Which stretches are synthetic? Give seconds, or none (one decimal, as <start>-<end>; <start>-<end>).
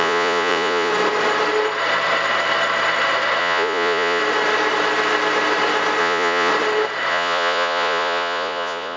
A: 0.0-0.9; 3.4-4.2; 6.0-6.5; 7.1-9.0